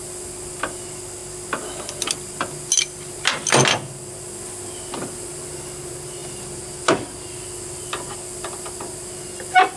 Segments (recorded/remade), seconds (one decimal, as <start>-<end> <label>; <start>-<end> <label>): 0.0-6.2 recorded; 6.2-7.2 remade; 7.2-9.8 recorded